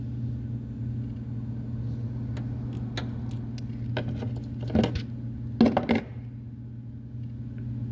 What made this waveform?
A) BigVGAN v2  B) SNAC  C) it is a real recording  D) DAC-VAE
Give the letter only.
C